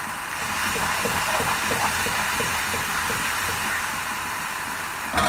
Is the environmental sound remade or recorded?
recorded